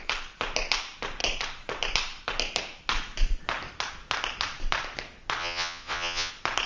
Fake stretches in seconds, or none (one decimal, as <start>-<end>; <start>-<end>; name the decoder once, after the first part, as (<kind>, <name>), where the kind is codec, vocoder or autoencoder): 5.4-6.3 (vocoder, Vocos)